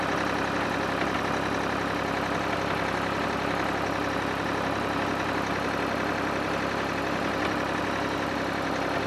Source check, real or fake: real